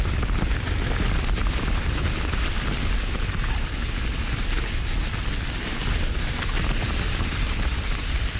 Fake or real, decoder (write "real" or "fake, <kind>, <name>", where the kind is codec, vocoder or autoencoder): fake, vocoder, BigVGAN v2